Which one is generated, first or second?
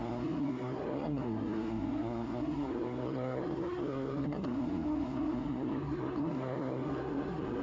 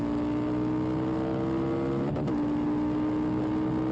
first